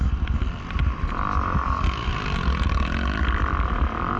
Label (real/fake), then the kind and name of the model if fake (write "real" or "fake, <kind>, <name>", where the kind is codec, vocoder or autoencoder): real